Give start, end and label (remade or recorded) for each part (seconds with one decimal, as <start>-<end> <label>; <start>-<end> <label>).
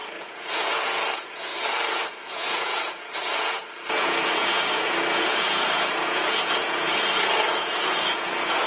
0.0-8.7 remade